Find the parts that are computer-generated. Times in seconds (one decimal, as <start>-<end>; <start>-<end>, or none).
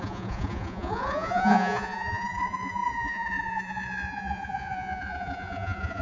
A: 0.0-6.0